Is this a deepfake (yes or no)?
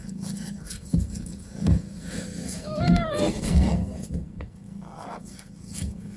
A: yes